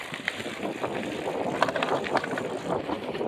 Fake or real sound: fake